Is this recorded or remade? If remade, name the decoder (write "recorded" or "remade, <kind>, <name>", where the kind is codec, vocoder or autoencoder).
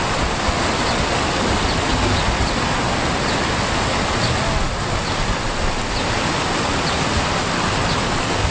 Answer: recorded